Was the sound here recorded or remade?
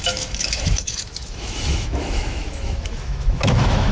remade